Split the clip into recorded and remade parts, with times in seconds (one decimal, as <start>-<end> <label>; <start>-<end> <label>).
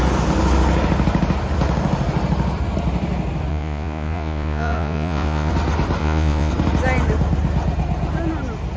0.0-3.5 recorded; 3.5-5.5 remade; 5.5-6.0 recorded; 6.0-6.5 remade; 6.5-8.8 recorded